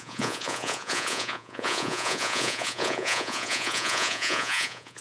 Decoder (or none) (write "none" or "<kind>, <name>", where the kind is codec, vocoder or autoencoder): vocoder, Vocos